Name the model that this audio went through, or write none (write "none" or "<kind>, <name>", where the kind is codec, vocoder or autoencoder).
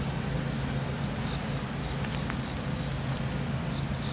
none